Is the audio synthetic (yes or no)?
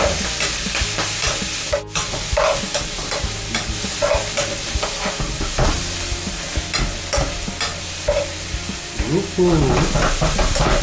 no